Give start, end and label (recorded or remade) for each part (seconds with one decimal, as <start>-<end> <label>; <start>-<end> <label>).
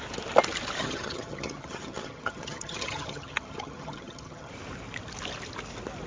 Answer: 0.0-0.8 recorded; 0.8-4.5 remade; 4.5-6.1 recorded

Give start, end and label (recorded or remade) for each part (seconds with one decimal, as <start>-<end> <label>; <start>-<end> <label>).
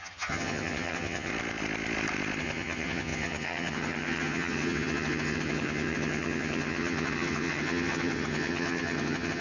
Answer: 0.0-1.3 remade; 1.3-2.4 recorded; 2.4-9.4 remade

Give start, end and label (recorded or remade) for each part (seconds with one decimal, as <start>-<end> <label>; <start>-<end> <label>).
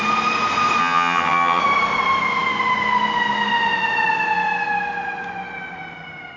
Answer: 0.0-0.8 recorded; 0.8-1.6 remade; 1.6-6.4 recorded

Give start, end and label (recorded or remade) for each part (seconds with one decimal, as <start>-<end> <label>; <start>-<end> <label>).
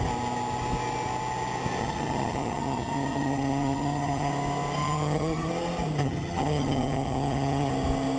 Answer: 0.0-1.8 recorded; 1.8-4.3 remade; 4.3-4.8 recorded; 4.8-5.5 remade; 5.5-6.0 recorded; 6.0-7.7 remade; 7.7-8.2 recorded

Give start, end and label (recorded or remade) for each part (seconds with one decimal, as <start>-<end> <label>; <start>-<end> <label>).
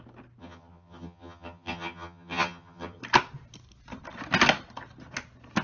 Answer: 0.0-0.4 recorded; 0.4-3.0 remade; 3.0-5.6 recorded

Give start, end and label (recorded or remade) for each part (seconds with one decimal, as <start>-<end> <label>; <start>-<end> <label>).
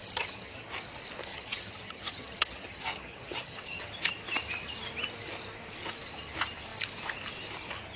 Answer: 0.0-0.7 remade; 0.7-1.3 recorded; 1.3-3.8 remade; 3.8-8.0 recorded